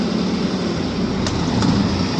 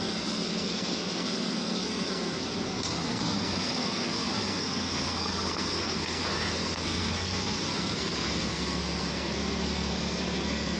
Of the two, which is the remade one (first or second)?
second